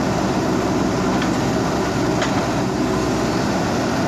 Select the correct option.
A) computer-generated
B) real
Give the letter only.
B